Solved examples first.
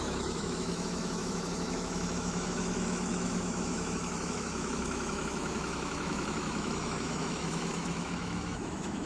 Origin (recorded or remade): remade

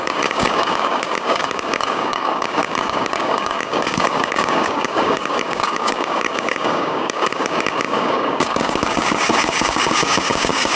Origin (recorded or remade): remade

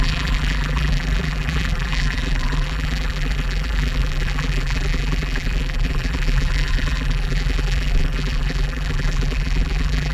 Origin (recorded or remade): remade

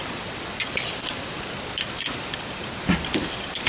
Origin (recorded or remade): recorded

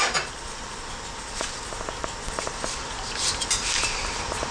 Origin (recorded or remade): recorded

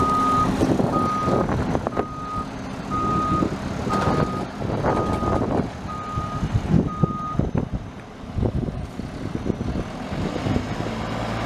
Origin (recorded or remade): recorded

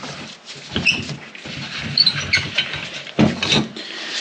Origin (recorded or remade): recorded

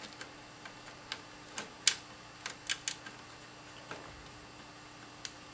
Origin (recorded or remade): recorded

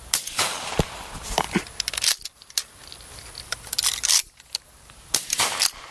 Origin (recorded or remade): recorded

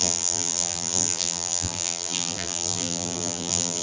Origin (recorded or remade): remade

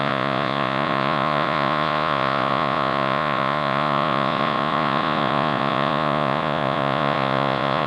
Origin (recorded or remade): remade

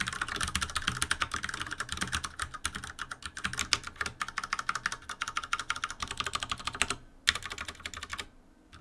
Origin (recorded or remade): recorded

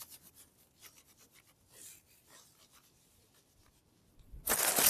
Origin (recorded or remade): recorded